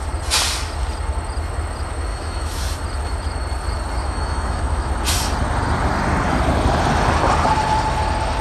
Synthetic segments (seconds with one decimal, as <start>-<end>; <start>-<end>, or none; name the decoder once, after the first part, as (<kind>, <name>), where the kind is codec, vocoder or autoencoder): 2.1-2.6 (autoencoder, DAC-VAE); 4.0-4.9